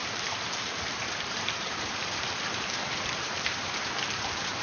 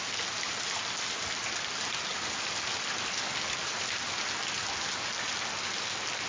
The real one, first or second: second